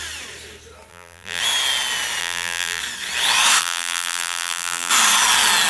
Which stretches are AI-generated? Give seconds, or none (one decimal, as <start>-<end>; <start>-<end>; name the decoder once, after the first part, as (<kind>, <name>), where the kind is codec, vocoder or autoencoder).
0.9-1.4 (vocoder, BigVGAN v2); 2.2-2.8; 3.6-4.9